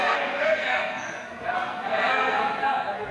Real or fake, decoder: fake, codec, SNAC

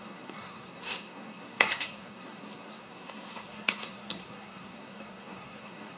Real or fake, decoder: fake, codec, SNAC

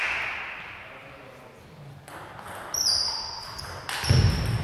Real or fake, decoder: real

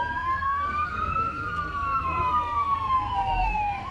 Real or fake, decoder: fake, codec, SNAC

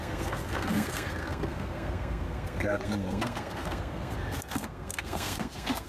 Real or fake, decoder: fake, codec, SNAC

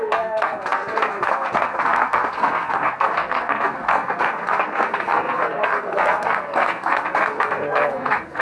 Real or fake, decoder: fake, codec, SNAC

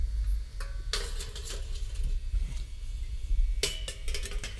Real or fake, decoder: real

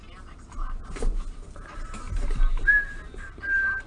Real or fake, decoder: real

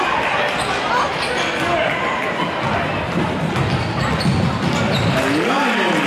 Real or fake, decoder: real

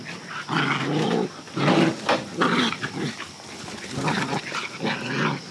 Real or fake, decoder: real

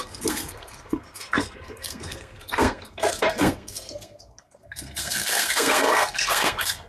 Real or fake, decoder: fake, codec, SNAC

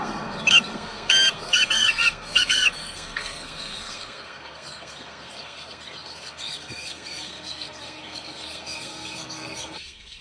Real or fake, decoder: fake, codec, SNAC